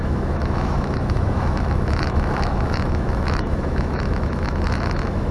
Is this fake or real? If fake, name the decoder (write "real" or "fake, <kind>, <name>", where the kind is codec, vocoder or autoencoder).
fake, autoencoder, DAC-VAE